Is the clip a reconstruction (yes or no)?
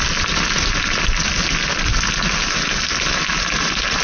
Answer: no